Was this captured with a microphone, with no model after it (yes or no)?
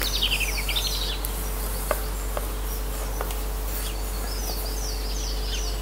yes